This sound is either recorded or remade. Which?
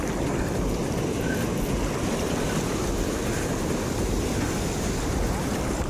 recorded